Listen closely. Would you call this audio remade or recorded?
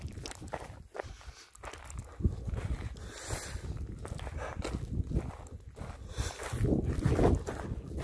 recorded